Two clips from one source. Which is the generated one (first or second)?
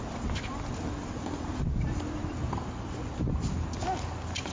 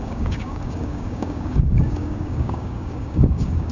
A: second